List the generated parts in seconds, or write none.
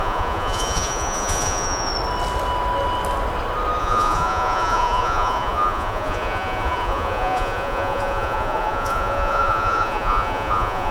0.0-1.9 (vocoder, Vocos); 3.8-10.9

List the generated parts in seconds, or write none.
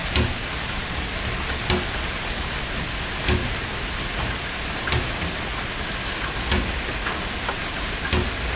none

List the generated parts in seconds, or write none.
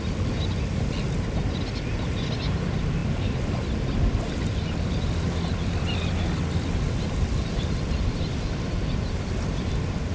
none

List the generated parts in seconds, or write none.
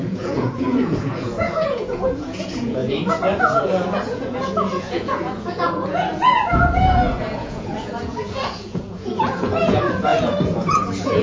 0.0-2.8 (vocoder, Vocos); 3.4-11.2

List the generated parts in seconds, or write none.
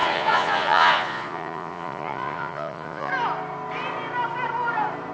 0.0-3.1 (vocoder, Vocos)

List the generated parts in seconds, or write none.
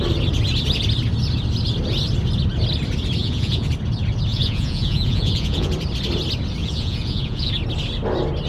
3.2-3.7 (vocoder, Vocos); 4.3-5.7; 6.6-7.5